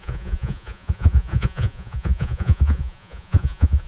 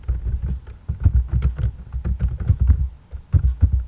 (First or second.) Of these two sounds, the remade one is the first